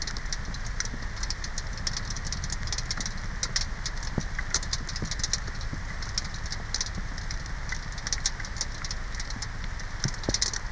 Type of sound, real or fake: real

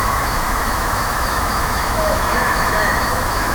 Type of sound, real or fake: fake